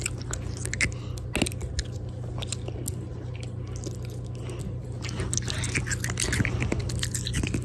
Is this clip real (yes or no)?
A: yes